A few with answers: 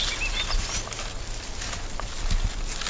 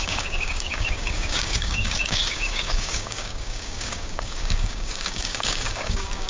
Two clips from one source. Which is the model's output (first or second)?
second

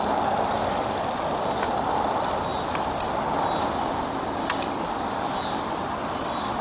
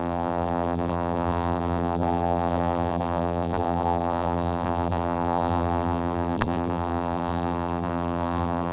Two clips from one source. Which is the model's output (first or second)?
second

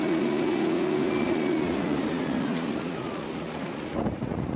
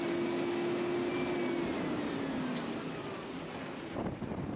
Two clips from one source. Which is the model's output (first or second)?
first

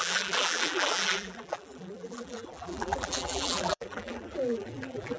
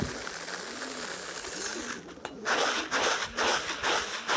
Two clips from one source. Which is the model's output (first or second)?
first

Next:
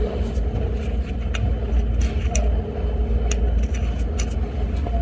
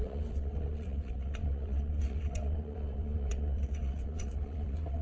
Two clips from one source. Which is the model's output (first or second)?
second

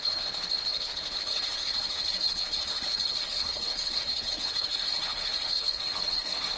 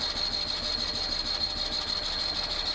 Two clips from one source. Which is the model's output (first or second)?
first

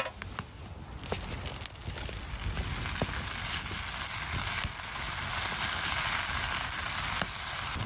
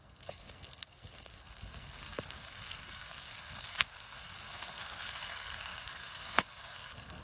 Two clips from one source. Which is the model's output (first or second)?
second